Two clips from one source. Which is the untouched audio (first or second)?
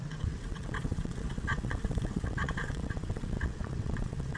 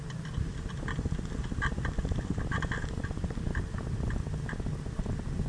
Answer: second